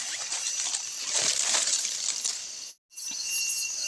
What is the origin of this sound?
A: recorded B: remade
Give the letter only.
A